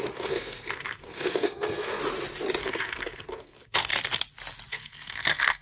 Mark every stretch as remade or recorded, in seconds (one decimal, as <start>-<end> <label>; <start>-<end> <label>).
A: 0.0-2.0 remade; 2.0-2.6 recorded; 2.6-3.9 remade; 3.9-4.7 recorded; 4.7-5.6 remade